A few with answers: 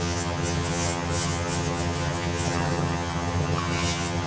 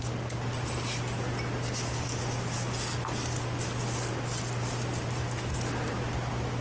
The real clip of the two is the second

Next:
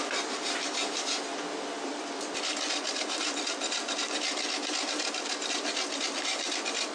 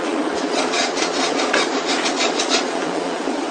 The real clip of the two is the first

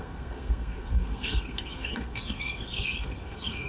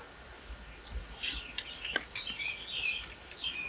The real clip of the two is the second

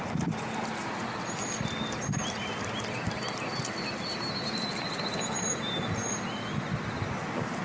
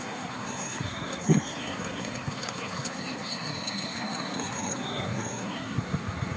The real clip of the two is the first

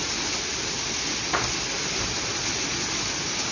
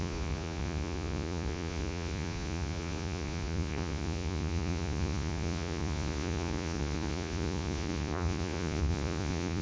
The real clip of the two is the first